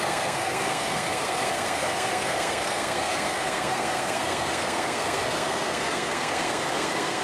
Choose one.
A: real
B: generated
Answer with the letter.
B